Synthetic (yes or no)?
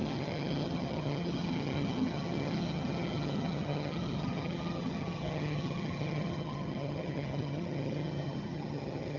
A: yes